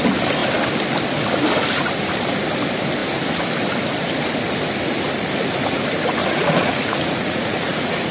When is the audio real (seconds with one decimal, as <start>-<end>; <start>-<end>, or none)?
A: 0.0-6.2